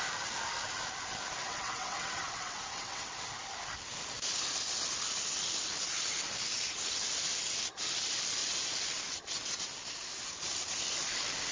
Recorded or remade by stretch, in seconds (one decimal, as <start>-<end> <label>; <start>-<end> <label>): 0.0-1.4 recorded; 1.4-3.2 remade; 3.2-11.5 recorded